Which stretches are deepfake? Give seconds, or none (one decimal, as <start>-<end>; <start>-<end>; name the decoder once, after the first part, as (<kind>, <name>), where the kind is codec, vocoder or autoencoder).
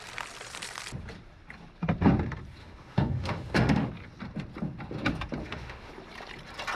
2.6-3.9 (autoencoder, DAC-VAE); 5.4-5.9